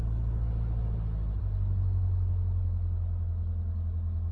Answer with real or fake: real